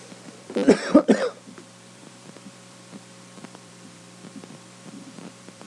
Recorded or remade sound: remade